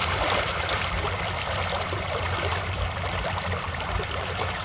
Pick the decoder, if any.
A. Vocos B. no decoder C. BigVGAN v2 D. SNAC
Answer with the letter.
C